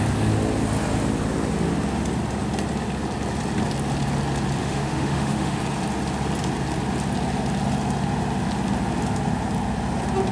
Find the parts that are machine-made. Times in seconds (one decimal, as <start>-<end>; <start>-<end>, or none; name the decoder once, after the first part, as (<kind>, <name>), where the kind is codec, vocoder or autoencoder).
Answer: 4.6-5.6 (autoencoder, DAC-VAE)